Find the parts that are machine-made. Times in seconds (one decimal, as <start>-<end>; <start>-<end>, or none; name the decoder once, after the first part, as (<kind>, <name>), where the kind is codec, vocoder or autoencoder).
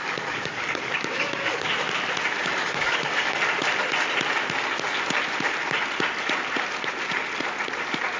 0.0-1.7 (codec, DAC); 2.4-3.4